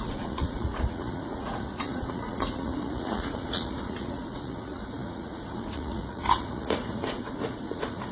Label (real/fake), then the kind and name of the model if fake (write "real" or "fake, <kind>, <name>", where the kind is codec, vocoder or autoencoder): fake, vocoder, Vocos